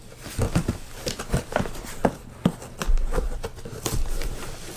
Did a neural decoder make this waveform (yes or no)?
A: no